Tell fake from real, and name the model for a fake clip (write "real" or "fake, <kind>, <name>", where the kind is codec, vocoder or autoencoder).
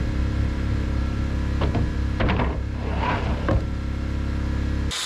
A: real